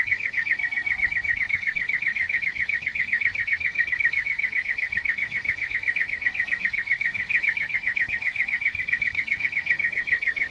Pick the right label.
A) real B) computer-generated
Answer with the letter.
B